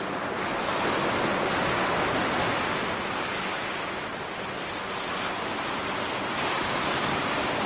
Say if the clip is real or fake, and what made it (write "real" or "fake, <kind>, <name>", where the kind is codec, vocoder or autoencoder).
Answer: real